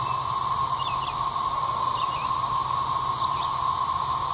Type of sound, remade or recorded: recorded